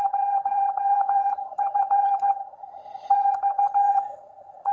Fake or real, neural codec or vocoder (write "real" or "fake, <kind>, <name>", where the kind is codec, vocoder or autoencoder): fake, vocoder, HiFi-GAN